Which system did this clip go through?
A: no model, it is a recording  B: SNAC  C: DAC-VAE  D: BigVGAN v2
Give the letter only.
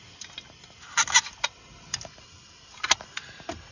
A